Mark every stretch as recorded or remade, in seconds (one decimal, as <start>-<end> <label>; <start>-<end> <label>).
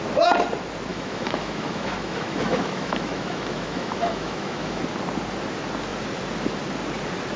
0.0-0.9 recorded; 0.9-4.8 remade; 4.8-7.4 recorded